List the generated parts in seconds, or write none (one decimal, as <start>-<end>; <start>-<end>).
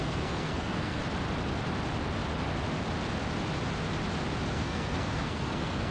0.0-1.0; 4.5-5.9